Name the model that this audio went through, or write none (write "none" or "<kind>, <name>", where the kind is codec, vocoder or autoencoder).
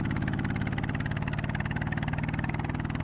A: none